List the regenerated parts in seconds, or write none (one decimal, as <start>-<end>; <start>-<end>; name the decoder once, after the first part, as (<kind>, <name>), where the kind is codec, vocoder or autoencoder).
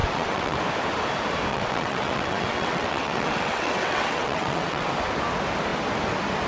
0.0-0.6 (vocoder, WaveNeXt); 1.5-4.9